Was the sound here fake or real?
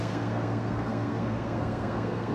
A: fake